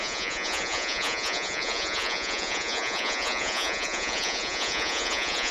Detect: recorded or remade remade